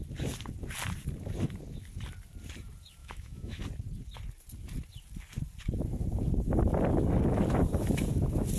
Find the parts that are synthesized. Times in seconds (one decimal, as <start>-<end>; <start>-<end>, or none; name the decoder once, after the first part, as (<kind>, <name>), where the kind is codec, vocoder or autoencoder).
3.0-3.6 (autoencoder, DAC-VAE)